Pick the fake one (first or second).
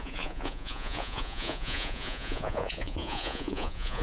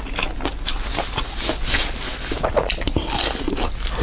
first